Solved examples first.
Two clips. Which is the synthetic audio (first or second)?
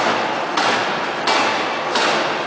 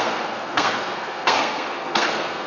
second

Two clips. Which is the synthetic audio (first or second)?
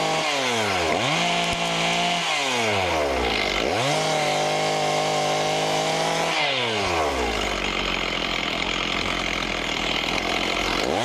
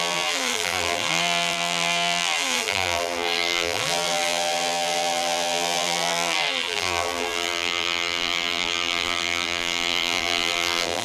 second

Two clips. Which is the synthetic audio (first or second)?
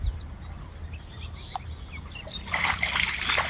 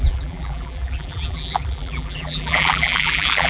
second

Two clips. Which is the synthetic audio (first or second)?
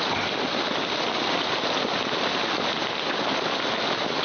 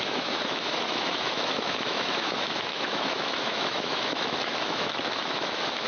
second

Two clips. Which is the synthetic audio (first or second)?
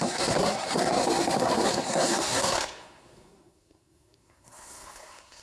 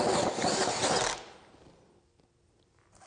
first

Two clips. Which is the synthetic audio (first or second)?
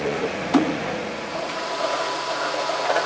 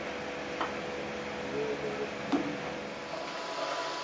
first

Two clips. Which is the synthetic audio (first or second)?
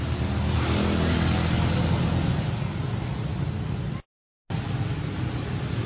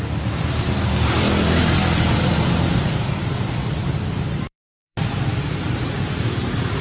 second